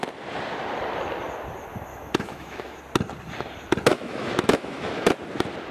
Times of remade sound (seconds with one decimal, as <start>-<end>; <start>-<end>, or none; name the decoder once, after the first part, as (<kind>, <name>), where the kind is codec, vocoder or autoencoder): 1.9-2.8 (autoencoder, DAC-VAE); 3.9-5.1